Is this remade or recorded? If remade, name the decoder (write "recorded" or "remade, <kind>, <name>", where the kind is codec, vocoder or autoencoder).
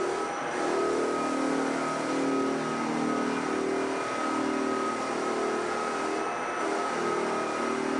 recorded